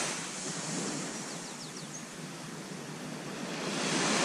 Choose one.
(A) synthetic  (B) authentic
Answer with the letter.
B